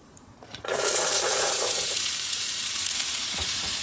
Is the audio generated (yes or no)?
yes